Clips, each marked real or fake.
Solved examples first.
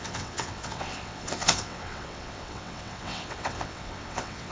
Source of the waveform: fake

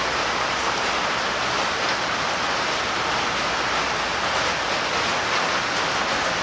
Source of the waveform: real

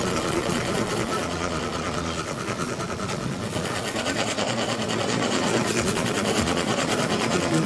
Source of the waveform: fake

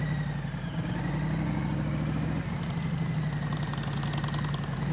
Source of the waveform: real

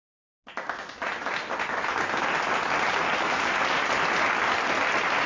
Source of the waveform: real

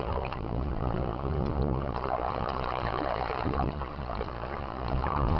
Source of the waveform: fake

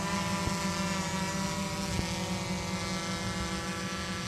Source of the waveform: real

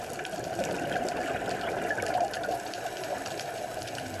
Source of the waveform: fake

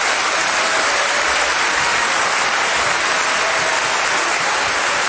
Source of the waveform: real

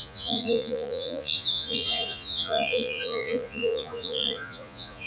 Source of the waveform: fake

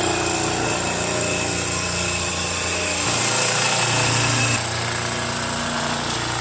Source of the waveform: real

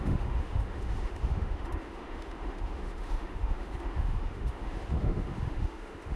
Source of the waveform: fake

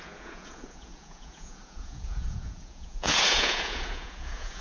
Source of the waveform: fake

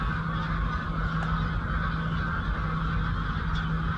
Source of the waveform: real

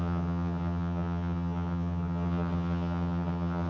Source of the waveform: fake